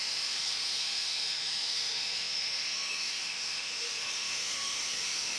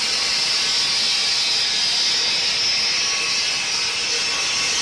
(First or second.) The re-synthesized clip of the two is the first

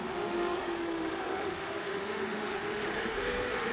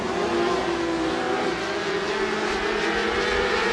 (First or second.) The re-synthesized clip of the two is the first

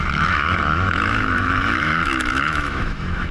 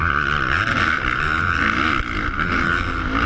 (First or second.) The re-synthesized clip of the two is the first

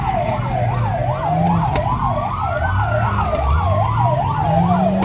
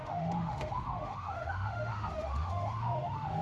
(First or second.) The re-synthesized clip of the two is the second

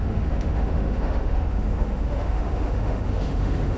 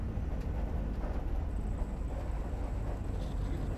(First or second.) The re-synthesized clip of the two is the first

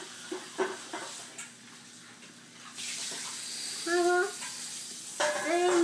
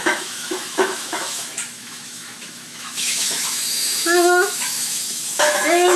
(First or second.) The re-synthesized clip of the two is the second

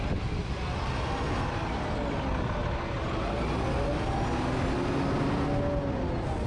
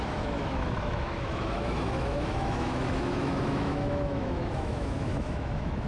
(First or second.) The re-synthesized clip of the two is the second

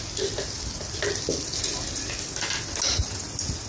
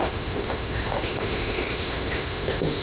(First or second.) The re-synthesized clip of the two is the second